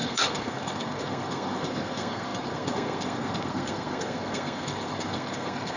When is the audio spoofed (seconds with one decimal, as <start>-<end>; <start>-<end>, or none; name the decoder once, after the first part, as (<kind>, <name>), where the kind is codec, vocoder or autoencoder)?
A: 0.0-5.8 (codec, SNAC)